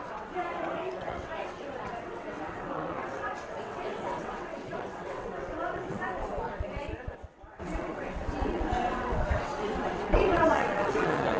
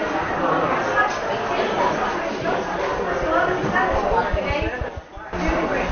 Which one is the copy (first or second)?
first